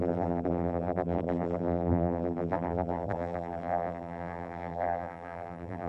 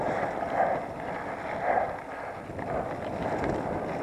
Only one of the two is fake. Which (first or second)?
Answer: first